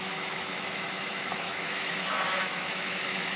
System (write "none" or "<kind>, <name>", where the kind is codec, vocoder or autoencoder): autoencoder, DAC-VAE